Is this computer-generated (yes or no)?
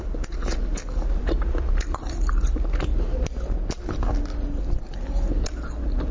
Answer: no